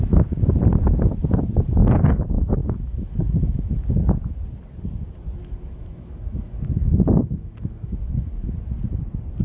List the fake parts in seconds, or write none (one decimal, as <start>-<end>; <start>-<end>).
2.6-3.9; 5.4-8.6